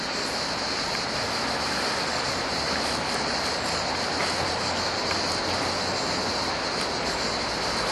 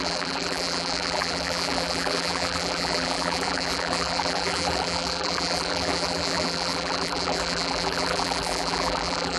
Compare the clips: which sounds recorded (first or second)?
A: first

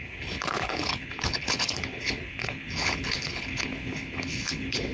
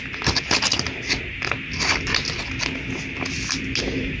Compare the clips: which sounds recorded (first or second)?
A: second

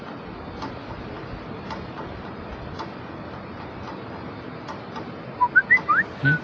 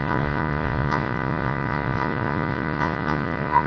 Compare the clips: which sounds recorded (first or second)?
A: first